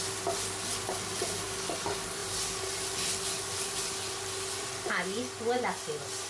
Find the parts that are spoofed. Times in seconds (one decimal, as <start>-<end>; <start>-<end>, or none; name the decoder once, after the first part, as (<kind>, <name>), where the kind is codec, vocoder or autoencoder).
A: none